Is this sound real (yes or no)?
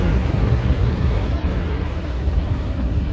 no